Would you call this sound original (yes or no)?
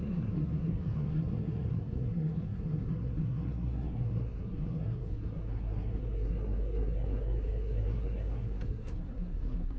no